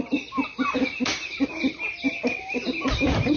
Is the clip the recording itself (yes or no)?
yes